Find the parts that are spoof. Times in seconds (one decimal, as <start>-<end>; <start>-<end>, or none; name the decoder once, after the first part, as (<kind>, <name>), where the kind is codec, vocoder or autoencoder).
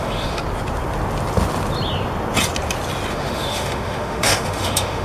0.0-0.4 (autoencoder, DAC-VAE); 3.1-5.0